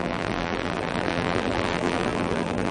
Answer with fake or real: fake